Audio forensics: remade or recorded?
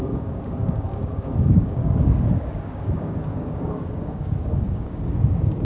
remade